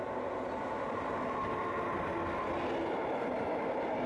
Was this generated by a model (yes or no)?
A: no